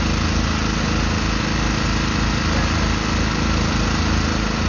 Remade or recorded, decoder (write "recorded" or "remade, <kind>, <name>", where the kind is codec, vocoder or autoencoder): recorded